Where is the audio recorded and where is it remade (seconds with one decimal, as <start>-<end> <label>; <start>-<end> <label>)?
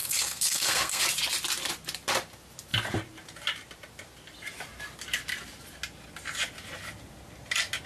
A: 0.0-1.0 remade; 1.0-7.9 recorded